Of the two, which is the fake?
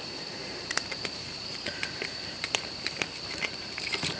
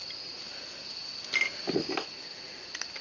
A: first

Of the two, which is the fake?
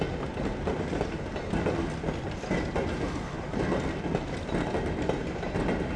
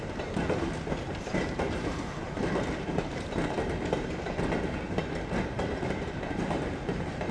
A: second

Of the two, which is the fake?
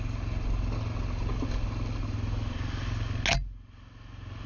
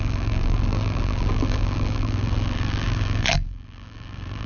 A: second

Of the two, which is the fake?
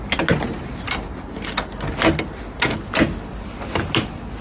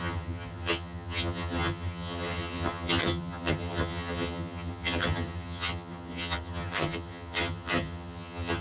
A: second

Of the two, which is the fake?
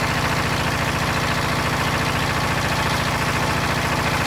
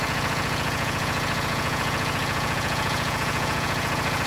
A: second